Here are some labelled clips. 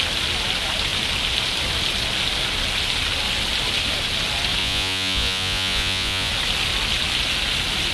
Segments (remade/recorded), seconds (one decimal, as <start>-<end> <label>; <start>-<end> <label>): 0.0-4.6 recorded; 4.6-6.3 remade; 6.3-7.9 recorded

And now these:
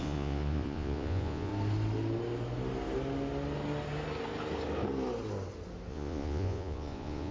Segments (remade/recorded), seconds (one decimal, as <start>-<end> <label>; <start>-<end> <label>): 0.0-1.5 remade; 1.5-5.9 recorded; 5.9-7.3 remade

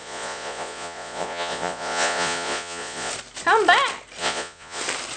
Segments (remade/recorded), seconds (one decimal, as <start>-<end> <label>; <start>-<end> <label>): 0.0-3.1 remade; 3.1-4.2 recorded; 4.2-4.8 remade; 4.8-5.2 recorded